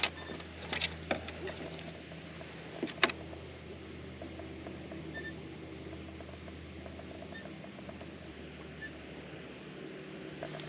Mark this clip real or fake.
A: real